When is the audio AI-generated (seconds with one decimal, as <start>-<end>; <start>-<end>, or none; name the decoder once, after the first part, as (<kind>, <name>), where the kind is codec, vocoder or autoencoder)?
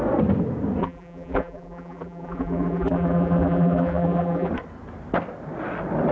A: 0.8-4.5 (vocoder, BigVGAN v2)